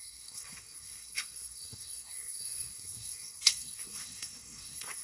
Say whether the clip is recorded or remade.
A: remade